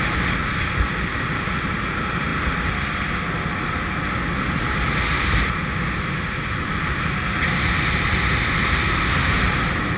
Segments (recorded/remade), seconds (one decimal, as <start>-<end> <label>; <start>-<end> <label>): 0.0-10.0 recorded